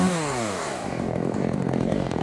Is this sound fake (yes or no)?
yes